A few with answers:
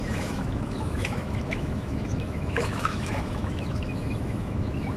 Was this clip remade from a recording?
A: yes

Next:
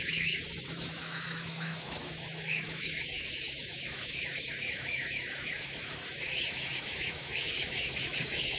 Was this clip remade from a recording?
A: yes